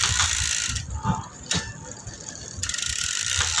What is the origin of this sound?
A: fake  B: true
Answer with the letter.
B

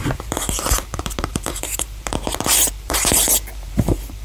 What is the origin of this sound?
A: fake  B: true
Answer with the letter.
A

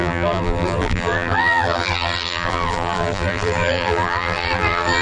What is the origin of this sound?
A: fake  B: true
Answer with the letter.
A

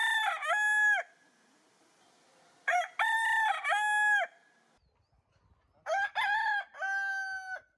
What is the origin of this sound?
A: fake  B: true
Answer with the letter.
B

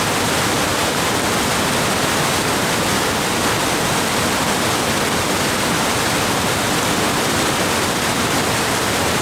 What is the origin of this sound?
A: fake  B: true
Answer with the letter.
B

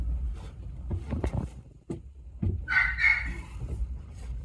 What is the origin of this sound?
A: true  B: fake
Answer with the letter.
A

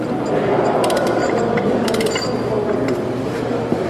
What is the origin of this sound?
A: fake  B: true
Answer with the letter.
A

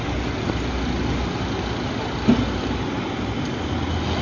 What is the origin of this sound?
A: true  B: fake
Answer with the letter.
A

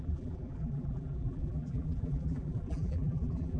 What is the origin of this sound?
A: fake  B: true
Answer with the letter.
A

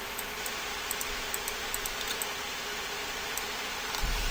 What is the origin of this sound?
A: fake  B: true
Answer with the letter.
B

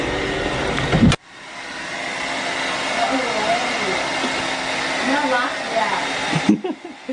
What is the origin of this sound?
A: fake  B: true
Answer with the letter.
B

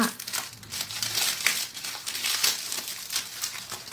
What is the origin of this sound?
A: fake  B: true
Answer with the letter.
B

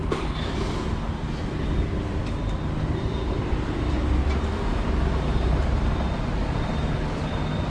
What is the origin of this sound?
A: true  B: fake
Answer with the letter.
B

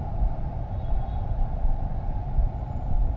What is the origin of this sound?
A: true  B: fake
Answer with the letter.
B